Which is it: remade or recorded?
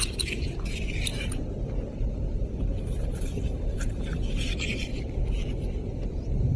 recorded